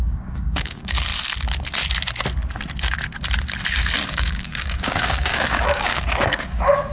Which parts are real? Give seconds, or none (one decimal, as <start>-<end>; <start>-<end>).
1.1-4.1